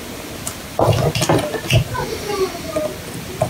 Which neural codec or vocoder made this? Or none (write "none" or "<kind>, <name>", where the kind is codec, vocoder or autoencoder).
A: none